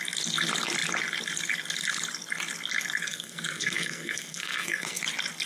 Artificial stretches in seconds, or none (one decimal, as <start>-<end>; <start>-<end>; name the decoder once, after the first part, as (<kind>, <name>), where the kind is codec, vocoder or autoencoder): 3.0-5.0 (codec, SNAC)